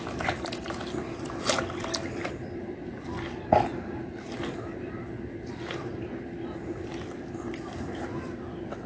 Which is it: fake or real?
real